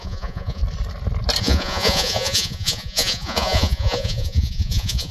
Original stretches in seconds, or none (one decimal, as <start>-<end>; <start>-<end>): 0.6-1.4